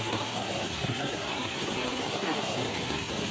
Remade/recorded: remade